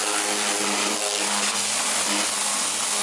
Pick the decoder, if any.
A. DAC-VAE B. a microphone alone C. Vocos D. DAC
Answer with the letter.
B